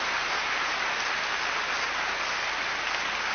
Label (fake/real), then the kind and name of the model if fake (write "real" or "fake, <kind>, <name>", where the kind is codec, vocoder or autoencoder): real